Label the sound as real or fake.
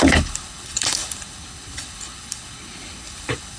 fake